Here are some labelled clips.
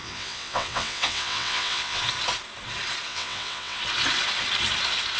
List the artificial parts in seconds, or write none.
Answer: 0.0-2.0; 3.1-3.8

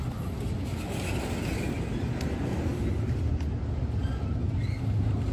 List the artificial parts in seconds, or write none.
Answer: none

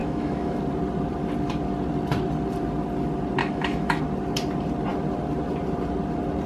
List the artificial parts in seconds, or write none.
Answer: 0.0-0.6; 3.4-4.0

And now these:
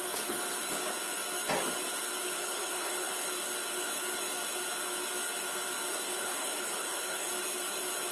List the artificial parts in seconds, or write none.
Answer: 2.4-3.3; 5.9-7.3

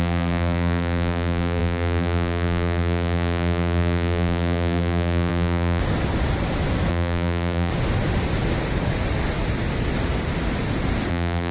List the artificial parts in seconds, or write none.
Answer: 0.0-5.8; 6.9-7.7; 11.1-11.5

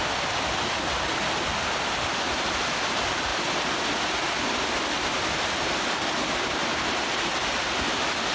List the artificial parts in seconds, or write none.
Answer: none

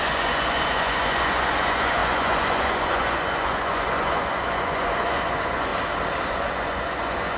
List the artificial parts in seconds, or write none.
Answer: 0.0-5.7; 6.3-7.4